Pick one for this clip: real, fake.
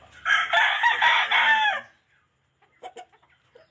real